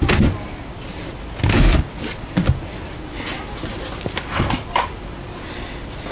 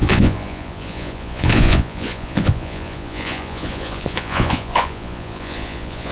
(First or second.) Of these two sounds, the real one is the first